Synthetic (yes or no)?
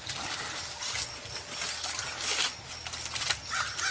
no